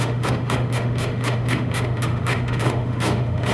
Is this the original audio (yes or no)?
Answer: no